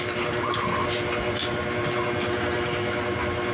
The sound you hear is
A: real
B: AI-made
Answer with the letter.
A